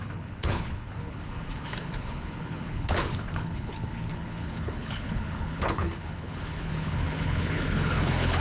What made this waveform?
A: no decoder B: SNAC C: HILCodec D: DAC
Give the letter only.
C